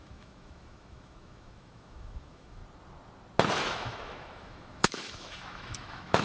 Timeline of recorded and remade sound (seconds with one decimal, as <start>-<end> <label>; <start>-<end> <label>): 0.0-2.6 remade; 2.6-3.5 recorded; 3.5-6.2 remade